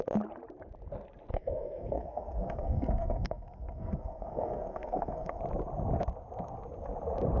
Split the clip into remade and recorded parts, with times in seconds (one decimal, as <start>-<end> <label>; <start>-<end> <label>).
0.0-1.3 recorded; 1.3-5.4 remade; 5.4-7.4 recorded